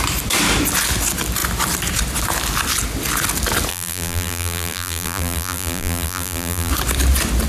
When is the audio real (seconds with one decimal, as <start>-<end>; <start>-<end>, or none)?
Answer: 0.0-3.7; 6.7-7.5